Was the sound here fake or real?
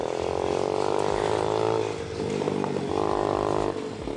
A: real